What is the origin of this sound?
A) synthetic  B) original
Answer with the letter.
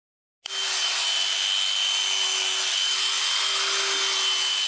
B